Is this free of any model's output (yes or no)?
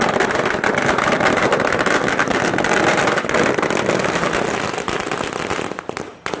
yes